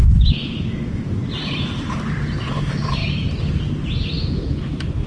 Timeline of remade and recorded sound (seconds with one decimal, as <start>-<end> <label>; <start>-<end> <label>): 0.0-1.2 remade; 1.2-2.5 recorded; 2.5-3.0 remade; 3.0-4.3 recorded; 4.3-5.1 remade